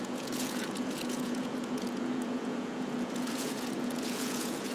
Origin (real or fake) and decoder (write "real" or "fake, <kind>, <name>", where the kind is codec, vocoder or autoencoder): fake, vocoder, Vocos